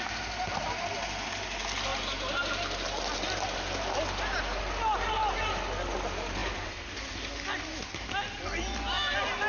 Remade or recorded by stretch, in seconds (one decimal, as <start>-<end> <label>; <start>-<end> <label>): 0.0-9.5 recorded